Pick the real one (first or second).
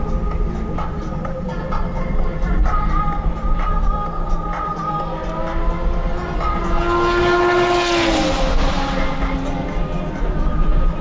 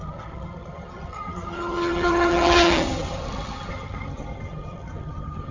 first